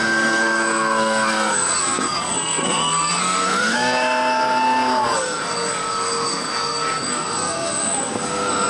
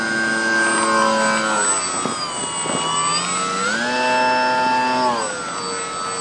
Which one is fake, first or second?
first